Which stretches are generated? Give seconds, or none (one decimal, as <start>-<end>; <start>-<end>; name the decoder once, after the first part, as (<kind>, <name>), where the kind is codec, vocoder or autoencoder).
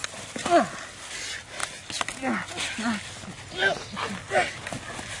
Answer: none